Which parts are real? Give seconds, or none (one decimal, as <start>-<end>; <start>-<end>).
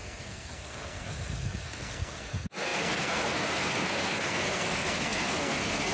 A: none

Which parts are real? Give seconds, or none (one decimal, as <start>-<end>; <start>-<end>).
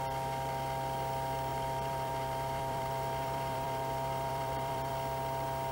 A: 0.0-1.5; 4.9-5.7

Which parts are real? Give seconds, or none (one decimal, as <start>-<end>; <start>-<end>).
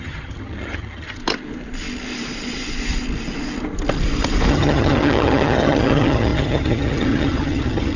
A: 1.2-4.5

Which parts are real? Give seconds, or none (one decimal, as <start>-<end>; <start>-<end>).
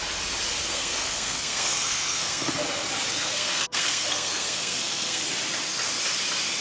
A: 0.0-0.6; 2.5-3.1; 5.2-6.6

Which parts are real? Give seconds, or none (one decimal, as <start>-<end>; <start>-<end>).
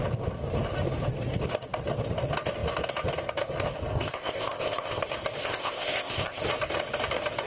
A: 0.0-3.9; 5.0-5.4; 6.4-7.5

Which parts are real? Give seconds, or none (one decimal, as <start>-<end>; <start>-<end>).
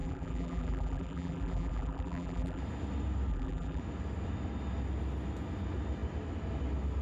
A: 2.6-3.3; 3.8-7.0